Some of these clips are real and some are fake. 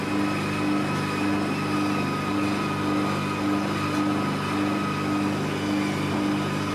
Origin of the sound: real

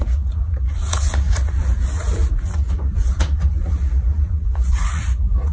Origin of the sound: fake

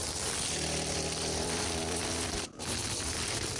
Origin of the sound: real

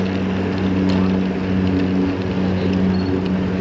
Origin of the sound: real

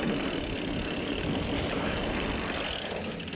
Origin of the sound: real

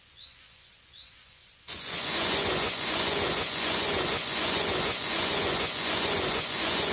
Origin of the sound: fake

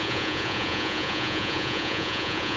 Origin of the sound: fake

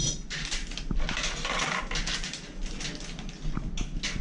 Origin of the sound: real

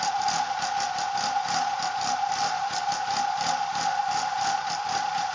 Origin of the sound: real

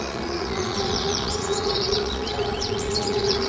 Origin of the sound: fake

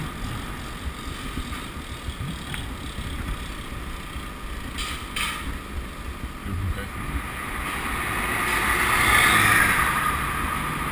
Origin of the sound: real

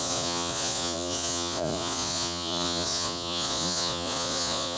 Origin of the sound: fake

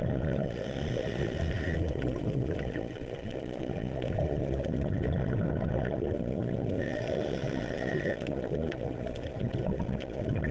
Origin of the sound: fake